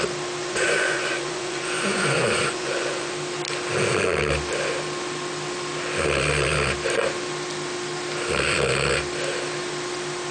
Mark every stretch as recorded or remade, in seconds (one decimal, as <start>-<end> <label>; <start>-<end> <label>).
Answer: 0.0-0.4 recorded; 0.4-3.1 remade; 3.1-10.3 recorded